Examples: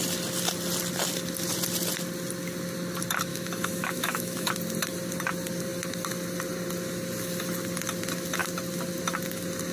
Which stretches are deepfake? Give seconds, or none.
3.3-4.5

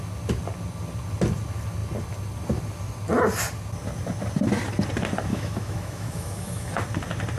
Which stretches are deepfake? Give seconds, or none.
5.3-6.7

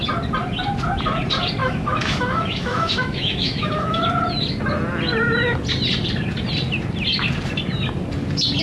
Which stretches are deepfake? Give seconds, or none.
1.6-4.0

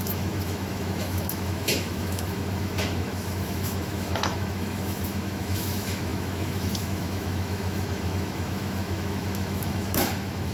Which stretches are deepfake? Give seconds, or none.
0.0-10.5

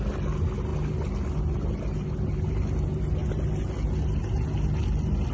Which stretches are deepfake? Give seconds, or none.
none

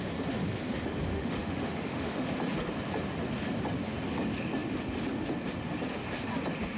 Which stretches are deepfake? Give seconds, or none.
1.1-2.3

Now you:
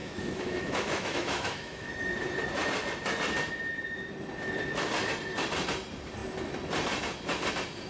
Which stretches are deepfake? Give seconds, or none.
0.0-1.9

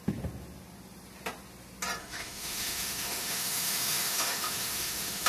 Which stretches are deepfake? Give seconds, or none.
2.0-5.3